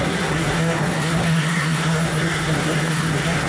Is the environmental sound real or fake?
fake